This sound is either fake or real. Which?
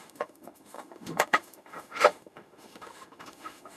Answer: fake